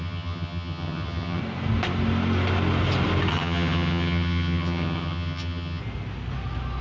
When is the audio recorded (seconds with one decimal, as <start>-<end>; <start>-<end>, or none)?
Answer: 1.4-3.3; 5.8-6.8